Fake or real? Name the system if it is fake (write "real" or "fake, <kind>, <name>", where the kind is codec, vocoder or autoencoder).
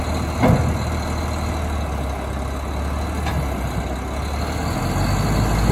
real